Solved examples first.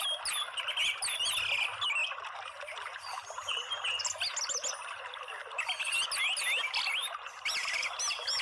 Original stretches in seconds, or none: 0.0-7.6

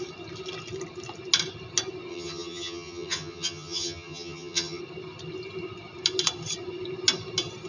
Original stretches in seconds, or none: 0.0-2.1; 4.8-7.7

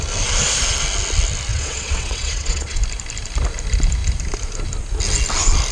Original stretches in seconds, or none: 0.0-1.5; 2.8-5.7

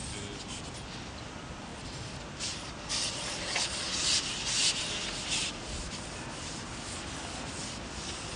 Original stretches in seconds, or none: 0.0-8.4

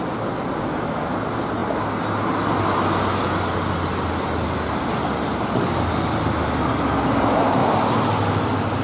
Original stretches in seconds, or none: 0.0-8.8

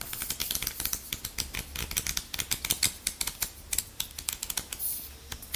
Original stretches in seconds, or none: 0.0-5.6